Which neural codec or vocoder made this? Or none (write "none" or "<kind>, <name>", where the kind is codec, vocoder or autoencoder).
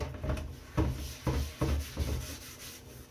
none